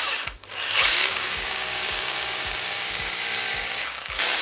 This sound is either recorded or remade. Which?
remade